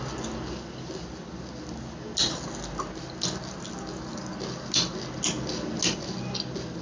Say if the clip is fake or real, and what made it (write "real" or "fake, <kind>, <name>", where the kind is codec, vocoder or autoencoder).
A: real